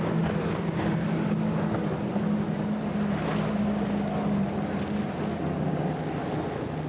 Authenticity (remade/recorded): recorded